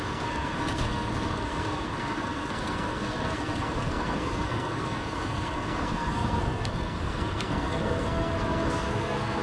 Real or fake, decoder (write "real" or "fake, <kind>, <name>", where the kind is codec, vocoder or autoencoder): fake, codec, SNAC